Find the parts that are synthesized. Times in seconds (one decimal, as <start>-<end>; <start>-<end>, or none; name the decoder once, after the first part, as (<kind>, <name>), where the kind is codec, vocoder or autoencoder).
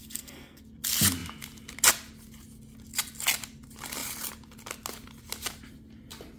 0.0-0.6 (codec, SNAC)